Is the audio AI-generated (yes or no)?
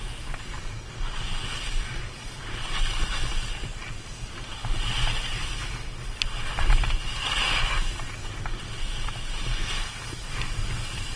no